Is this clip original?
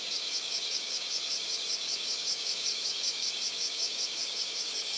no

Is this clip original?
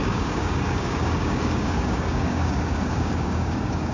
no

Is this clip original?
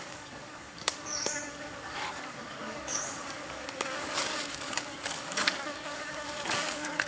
no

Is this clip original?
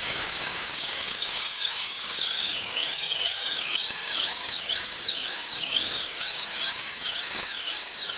no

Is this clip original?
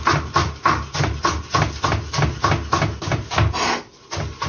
yes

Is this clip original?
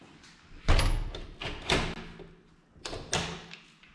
yes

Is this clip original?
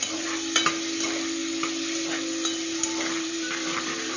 yes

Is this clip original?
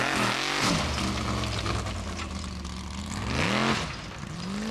yes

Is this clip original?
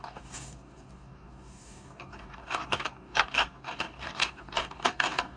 no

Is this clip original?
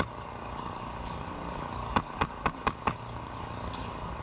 no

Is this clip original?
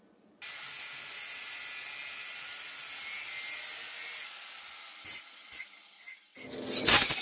yes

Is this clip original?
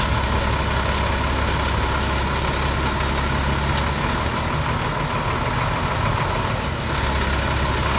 yes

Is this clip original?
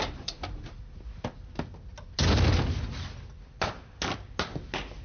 yes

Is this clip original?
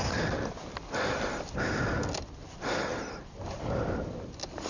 yes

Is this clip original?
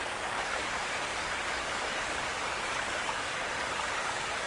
no